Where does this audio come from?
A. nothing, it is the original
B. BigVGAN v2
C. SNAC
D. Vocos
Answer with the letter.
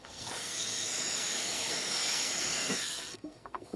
C